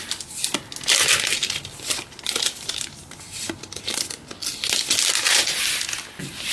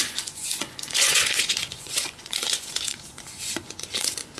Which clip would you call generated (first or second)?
second